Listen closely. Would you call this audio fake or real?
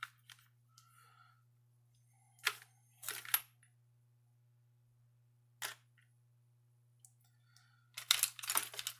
real